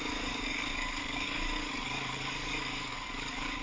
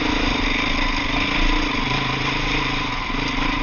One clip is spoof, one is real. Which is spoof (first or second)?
first